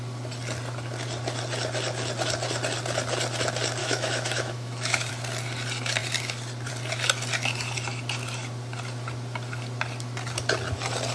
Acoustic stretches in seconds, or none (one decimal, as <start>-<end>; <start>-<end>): 0.0-3.8; 5.1-11.1